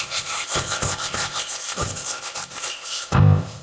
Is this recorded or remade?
remade